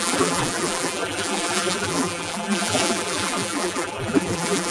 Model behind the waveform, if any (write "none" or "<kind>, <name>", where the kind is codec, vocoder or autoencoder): vocoder, BigVGAN v2